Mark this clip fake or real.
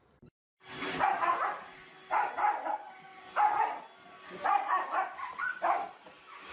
real